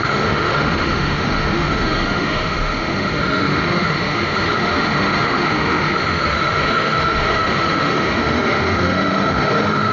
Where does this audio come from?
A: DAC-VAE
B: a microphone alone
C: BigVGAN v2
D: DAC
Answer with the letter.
A